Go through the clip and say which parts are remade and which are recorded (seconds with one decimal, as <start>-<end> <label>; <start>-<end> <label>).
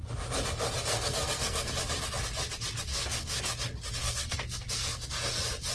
0.0-0.9 recorded; 0.9-1.7 remade; 1.7-2.9 recorded; 2.9-3.4 remade; 3.4-4.0 recorded; 4.0-5.0 remade; 5.0-5.7 recorded